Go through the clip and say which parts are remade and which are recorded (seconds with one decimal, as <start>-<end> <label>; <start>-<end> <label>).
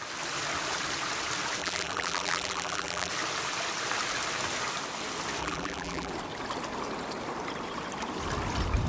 0.0-1.6 recorded; 1.6-3.1 remade; 3.1-5.4 recorded; 5.4-6.1 remade; 6.1-8.9 recorded